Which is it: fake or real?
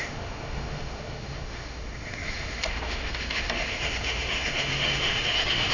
fake